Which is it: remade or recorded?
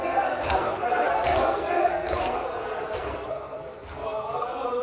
remade